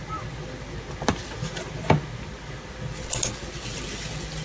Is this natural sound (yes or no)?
yes